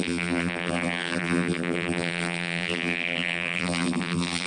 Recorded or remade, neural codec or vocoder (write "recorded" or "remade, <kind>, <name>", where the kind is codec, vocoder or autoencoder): remade, vocoder, BigVGAN v2